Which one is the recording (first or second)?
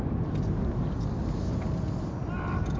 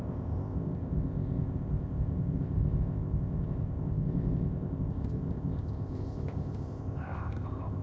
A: first